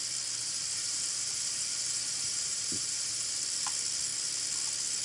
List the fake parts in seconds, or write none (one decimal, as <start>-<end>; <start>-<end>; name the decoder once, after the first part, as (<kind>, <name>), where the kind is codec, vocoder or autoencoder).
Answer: 0.4-3.4 (vocoder, BigVGAN v2)

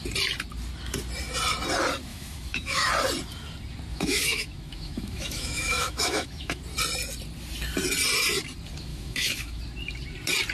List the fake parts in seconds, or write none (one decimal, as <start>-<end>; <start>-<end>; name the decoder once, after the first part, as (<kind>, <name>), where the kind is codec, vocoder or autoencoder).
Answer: 2.1-2.9 (autoencoder, DAC-VAE); 3.9-6.6; 8.9-9.6